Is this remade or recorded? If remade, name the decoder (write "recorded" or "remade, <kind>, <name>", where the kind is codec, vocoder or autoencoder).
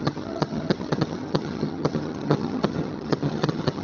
remade, vocoder, HiFi-GAN